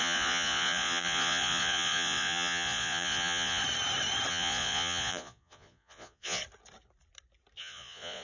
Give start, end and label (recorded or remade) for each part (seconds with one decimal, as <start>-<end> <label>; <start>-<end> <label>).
0.0-3.6 remade; 3.6-4.3 recorded; 4.3-6.4 remade; 6.4-7.6 recorded; 7.6-8.2 remade